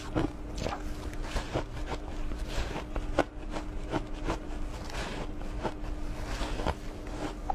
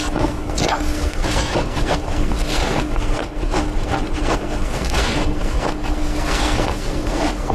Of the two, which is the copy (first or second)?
second